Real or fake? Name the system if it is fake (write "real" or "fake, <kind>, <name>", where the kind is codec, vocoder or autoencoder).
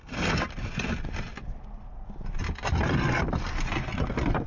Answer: real